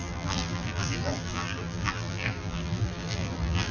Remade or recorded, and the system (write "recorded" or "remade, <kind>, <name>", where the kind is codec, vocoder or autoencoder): remade, vocoder, BigVGAN v2